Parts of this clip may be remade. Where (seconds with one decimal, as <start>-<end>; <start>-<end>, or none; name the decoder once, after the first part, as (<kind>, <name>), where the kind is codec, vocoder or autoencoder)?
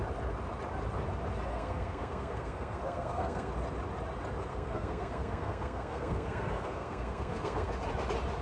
1.5-3.5 (codec, SNAC); 4.5-7.7